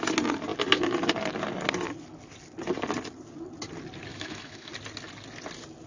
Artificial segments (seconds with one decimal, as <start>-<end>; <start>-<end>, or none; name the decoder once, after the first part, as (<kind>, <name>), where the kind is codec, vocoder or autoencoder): 4.1-4.7 (autoencoder, DAC-VAE)